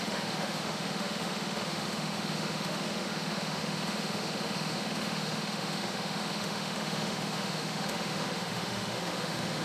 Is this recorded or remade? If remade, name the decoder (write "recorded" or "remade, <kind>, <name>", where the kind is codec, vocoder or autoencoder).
remade, autoencoder, DAC-VAE